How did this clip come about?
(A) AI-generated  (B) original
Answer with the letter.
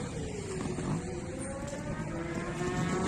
B